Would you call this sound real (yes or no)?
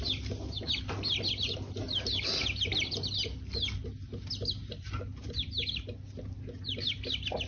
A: yes